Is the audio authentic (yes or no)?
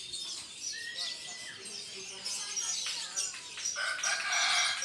yes